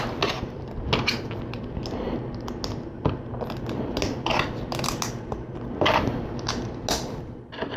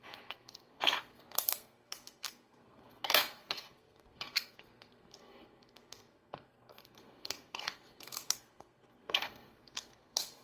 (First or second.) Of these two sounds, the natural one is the first